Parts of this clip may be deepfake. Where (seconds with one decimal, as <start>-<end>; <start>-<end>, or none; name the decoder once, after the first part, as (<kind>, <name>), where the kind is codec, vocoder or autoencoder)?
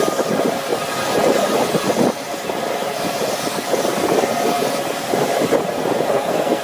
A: 6.1-6.6 (codec, SNAC)